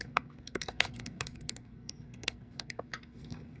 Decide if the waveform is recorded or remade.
remade